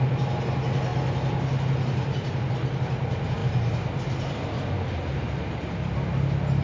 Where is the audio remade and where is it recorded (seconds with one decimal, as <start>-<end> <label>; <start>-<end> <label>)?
0.0-6.6 recorded